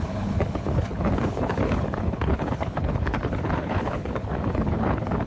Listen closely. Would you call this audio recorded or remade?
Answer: remade